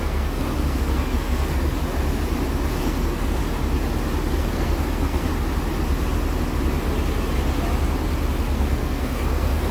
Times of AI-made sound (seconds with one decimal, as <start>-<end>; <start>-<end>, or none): 0.0-1.8; 2.8-3.4; 4.3-5.3; 8.4-9.7